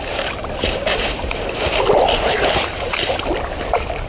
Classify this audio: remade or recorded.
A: recorded